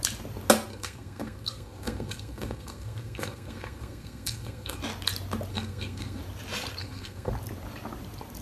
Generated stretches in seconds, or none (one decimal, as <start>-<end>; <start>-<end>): 0.7-4.8; 5.5-6.2; 6.8-7.3